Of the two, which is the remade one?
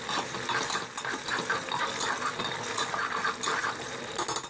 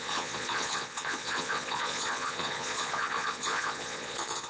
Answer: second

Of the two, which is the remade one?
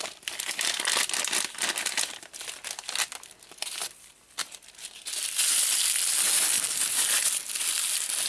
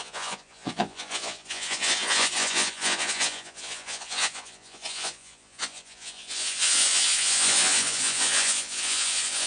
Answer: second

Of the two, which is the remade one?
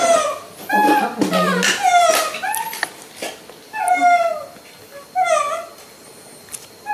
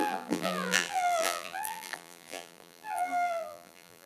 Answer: second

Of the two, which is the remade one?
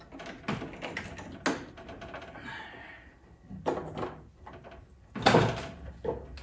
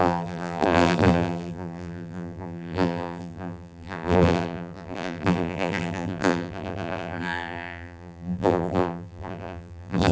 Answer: second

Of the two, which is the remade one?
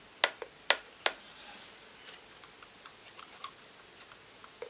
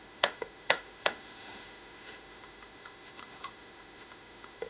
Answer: second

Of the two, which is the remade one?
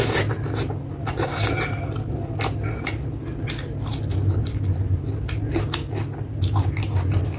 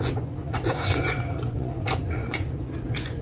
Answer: second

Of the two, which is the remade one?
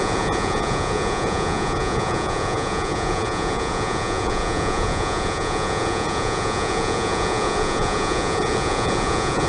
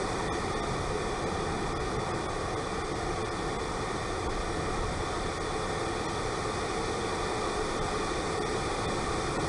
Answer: first